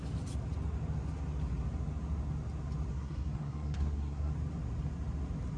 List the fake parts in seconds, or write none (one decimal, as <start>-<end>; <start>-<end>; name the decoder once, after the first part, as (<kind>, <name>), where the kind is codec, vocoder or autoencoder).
2.9-4.3 (codec, SNAC)